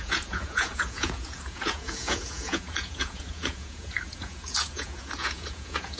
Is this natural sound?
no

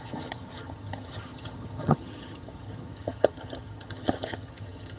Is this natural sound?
no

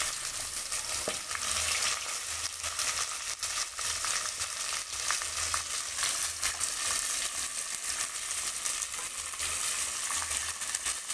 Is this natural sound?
yes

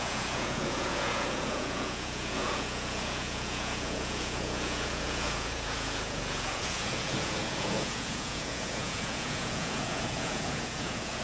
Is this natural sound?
no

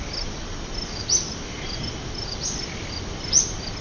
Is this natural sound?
yes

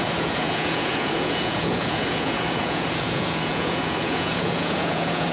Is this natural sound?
no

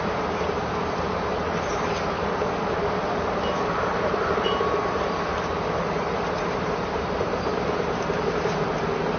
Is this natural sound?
no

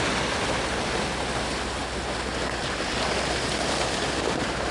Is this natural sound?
no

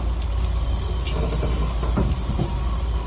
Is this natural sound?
yes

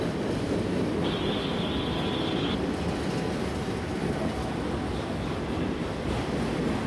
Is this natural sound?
yes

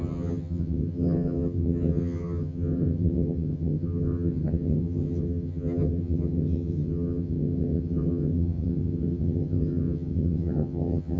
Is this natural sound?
no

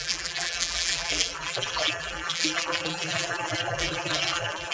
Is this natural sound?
no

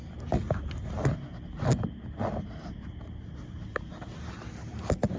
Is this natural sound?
yes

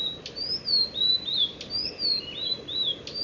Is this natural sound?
yes